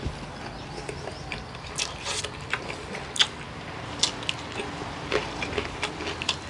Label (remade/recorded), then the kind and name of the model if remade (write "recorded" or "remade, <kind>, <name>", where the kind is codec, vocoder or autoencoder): recorded